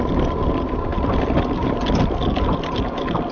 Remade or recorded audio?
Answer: recorded